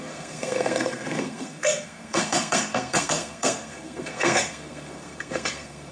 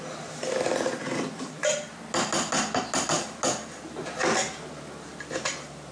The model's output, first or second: first